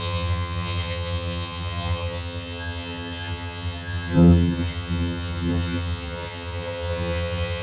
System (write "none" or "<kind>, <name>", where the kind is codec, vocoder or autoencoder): vocoder, HiFi-GAN